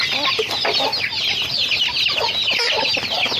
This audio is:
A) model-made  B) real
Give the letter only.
B